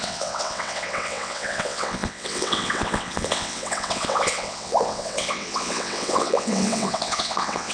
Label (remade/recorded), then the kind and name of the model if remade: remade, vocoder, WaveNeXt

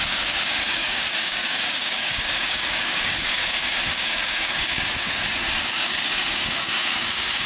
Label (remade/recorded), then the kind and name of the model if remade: remade, codec, DAC